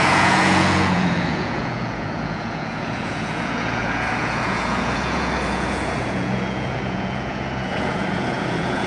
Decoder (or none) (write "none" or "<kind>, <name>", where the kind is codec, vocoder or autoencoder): vocoder, Vocos